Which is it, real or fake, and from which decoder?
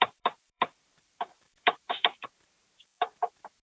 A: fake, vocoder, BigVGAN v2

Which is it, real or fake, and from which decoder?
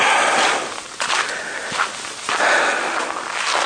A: real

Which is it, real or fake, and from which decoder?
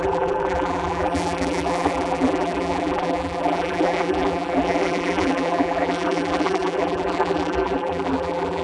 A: fake, vocoder, BigVGAN v2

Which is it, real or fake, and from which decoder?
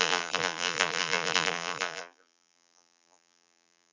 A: fake, vocoder, BigVGAN v2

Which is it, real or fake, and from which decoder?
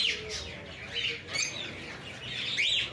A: real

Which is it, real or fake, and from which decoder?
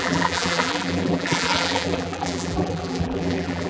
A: fake, vocoder, BigVGAN v2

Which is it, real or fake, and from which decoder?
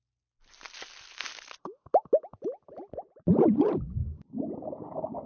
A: real